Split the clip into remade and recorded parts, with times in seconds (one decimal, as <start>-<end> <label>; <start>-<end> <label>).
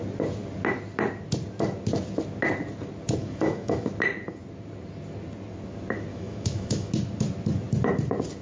0.0-3.2 recorded; 3.2-3.9 remade; 3.9-6.1 recorded; 6.1-6.9 remade; 6.9-8.4 recorded